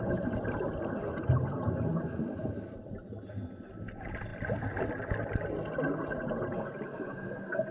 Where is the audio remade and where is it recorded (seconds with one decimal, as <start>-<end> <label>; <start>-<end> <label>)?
0.0-1.9 recorded; 1.9-3.3 remade; 3.3-7.7 recorded